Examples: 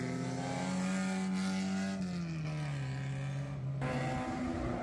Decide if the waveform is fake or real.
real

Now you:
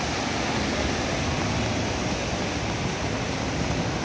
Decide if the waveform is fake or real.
real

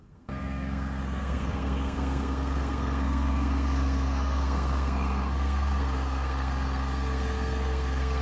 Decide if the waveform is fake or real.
fake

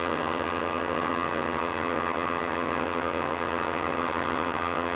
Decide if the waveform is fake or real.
fake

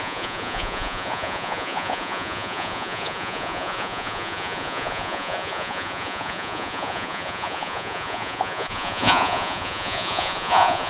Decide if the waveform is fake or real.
fake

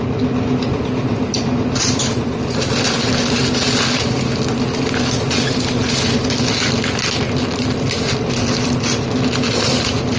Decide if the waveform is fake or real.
real